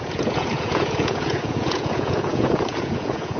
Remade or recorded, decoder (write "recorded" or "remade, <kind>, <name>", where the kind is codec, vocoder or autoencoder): remade, vocoder, Vocos